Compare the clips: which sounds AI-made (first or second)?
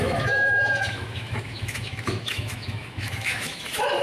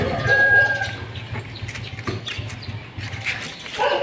first